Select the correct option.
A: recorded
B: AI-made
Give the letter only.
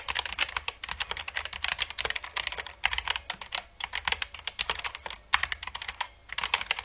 A